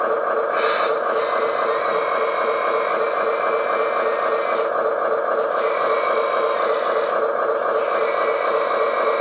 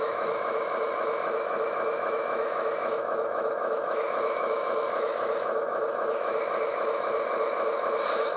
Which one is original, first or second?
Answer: first